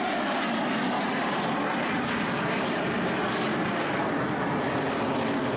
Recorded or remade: recorded